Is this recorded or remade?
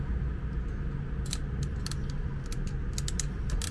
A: recorded